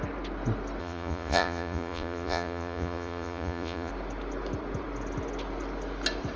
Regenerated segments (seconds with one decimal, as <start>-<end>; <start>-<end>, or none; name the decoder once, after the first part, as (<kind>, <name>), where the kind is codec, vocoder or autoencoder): 0.8-3.9 (vocoder, Vocos)